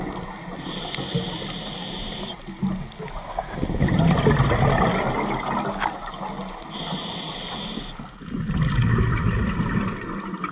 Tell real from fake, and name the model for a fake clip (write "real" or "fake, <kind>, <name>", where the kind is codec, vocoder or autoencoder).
real